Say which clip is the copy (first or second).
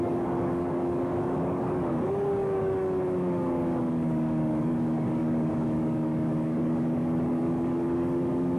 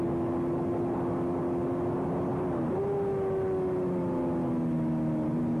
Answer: first